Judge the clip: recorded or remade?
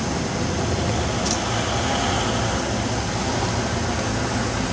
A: recorded